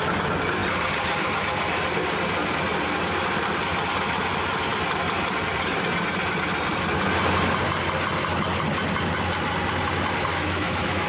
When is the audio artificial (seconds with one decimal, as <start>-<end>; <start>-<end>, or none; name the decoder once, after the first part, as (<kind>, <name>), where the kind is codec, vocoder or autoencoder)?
10.3-11.1 (autoencoder, DAC-VAE)